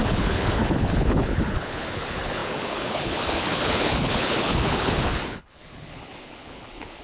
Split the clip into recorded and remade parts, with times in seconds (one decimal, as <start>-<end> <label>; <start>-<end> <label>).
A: 0.0-7.0 remade